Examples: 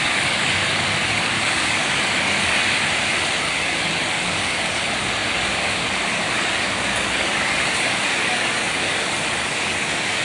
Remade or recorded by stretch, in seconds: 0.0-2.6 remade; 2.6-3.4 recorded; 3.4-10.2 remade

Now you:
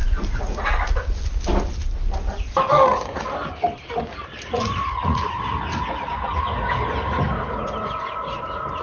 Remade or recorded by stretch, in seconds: 0.0-4.6 recorded; 4.6-5.2 remade; 5.2-8.8 recorded

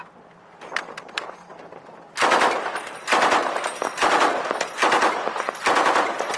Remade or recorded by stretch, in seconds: 0.0-6.4 recorded

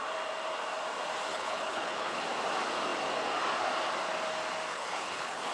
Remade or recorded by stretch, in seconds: 0.0-1.3 recorded; 1.3-2.2 remade; 2.2-4.7 recorded; 4.7-5.5 remade